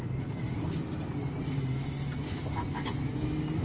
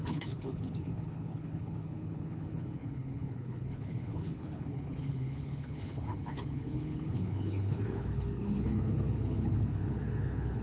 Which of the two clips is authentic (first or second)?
first